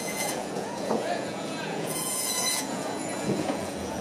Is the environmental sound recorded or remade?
remade